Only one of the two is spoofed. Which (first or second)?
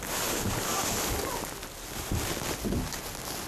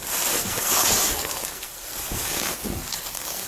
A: second